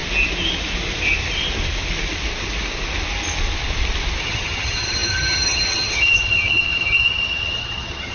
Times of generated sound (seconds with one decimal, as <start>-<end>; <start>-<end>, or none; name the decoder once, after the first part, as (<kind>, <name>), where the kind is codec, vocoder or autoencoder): 4.2-8.1 (vocoder, HiFi-GAN)